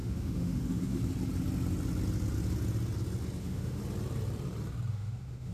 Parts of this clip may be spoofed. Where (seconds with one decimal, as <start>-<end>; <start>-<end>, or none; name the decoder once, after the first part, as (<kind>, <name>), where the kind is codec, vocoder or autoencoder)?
0.0-1.0 (autoencoder, DAC-VAE); 3.4-3.8; 4.9-5.5